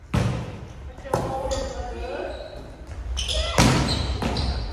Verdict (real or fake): real